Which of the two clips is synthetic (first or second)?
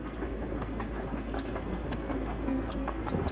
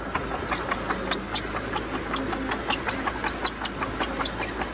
first